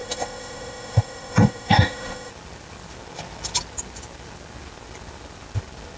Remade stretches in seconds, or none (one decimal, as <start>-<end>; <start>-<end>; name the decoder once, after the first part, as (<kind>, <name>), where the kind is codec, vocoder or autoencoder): 0.0-2.3 (autoencoder, DAC-VAE)